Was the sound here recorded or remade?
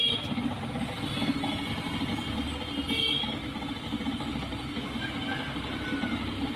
recorded